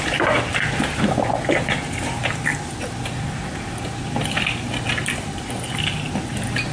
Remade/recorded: recorded